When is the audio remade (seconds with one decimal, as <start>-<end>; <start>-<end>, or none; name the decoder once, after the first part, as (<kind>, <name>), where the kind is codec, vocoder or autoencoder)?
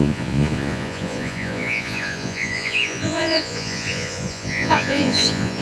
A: 0.0-5.6 (vocoder, Vocos)